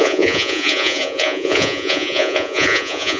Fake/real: fake